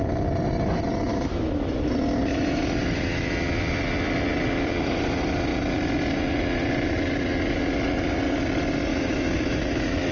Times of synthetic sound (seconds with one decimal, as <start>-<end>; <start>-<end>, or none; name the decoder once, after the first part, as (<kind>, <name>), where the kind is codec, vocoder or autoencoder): 1.3-1.9 (autoencoder, DAC-VAE); 2.8-3.3; 8.9-10.1